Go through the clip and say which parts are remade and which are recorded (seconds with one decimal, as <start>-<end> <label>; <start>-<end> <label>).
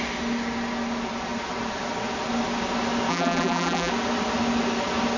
0.0-3.1 recorded; 3.1-3.9 remade; 3.9-5.2 recorded